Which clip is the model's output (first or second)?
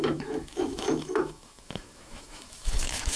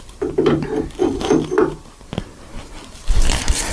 first